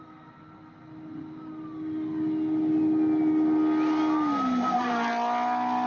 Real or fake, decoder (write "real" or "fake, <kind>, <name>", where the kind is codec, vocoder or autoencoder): real